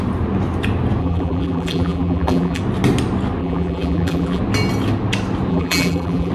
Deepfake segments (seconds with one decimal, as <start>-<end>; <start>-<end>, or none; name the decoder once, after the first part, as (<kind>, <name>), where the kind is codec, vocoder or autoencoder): 1.0-2.6 (vocoder, BigVGAN v2); 3.4-4.4; 5.5-6.3